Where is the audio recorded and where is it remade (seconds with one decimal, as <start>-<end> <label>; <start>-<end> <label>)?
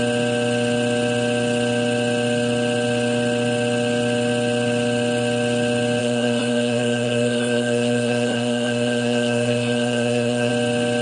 0.0-6.0 recorded; 6.0-10.5 remade; 10.5-11.0 recorded